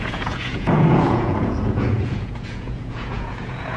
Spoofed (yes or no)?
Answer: yes